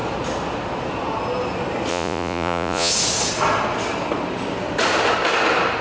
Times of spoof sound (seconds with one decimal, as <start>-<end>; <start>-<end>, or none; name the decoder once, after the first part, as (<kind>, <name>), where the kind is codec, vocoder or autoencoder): 1.9-2.9 (vocoder, Vocos)